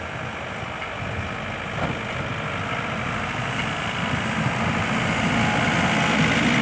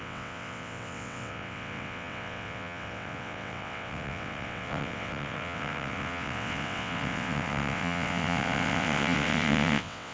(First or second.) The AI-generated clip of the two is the second